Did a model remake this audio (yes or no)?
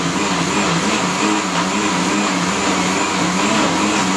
no